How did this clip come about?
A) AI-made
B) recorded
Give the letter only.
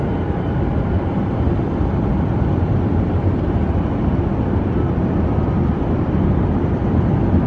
B